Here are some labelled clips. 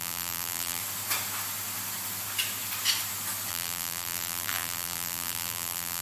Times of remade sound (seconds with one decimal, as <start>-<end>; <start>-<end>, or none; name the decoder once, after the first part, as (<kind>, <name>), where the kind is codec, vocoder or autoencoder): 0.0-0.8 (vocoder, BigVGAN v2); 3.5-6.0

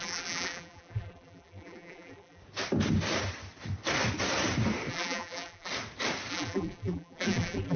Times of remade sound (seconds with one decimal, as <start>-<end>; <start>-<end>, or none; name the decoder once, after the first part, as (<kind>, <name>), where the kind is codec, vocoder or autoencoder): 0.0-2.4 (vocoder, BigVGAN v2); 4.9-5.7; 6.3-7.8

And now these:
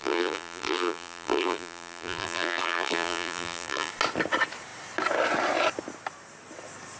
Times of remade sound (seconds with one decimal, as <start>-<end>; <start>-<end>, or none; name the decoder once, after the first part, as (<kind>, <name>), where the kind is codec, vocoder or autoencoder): 0.0-3.9 (vocoder, BigVGAN v2)

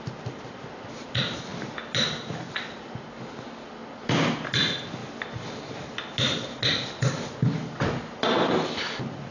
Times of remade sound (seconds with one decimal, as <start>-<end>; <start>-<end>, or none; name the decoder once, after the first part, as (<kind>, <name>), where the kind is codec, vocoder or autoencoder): none

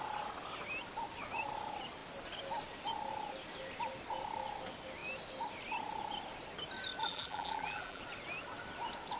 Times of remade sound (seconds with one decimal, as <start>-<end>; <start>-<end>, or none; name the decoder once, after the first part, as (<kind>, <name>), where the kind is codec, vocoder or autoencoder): 7.0-8.0 (vocoder, BigVGAN v2)

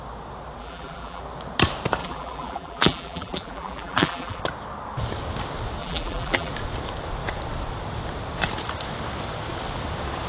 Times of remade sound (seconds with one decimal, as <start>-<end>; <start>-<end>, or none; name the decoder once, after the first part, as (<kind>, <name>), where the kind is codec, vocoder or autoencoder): 0.6-1.2 (vocoder, BigVGAN v2); 2.0-4.4; 5.8-6.5

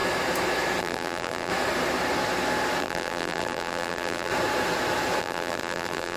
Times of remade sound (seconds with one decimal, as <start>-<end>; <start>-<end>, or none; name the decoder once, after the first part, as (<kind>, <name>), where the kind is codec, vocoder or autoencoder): 0.8-1.5 (vocoder, BigVGAN v2); 2.8-4.3; 5.2-6.2

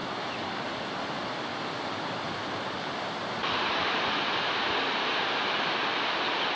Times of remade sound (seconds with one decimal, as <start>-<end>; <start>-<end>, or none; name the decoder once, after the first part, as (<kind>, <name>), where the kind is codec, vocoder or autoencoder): 3.4-5.3 (vocoder, BigVGAN v2)